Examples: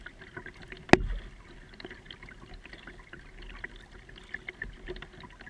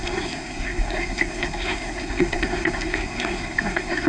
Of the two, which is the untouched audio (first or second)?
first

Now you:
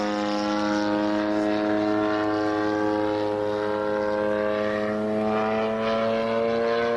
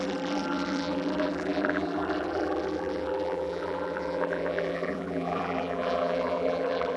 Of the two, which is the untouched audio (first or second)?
first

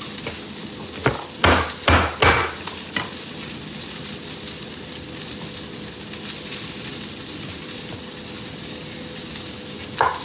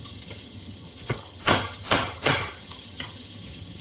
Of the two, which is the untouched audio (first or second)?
first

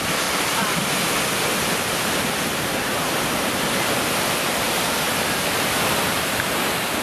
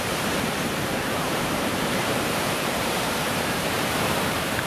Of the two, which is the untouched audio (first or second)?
first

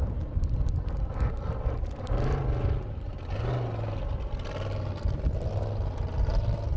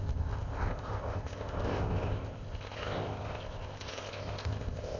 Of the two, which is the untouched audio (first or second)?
first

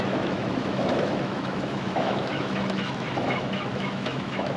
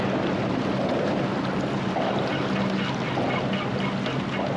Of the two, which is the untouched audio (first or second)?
second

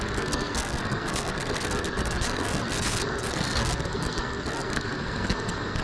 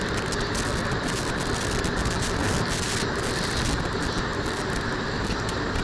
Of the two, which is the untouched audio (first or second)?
second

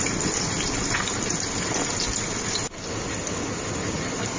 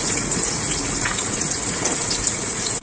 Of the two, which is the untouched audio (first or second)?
first